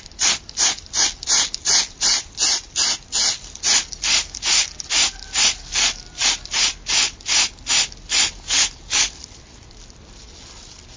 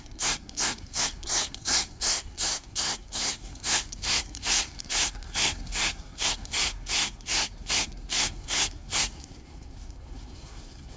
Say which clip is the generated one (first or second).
second